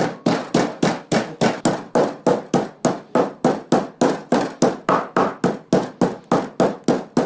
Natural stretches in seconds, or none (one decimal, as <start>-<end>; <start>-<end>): 0.0-7.3